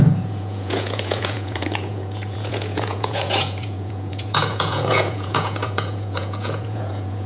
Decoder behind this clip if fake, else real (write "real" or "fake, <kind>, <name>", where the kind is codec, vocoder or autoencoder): fake, vocoder, Vocos